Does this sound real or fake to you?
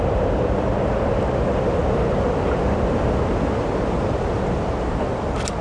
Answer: real